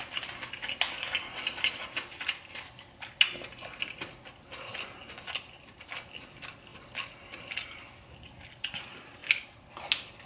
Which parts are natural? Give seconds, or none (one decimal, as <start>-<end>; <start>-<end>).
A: 0.0-10.3